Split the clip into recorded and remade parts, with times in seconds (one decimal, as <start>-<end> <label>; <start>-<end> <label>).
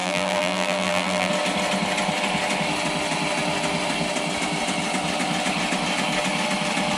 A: 0.0-1.3 remade; 1.3-7.0 recorded